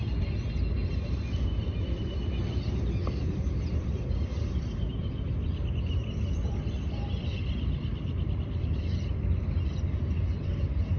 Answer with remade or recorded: recorded